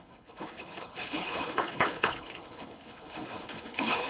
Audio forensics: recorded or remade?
remade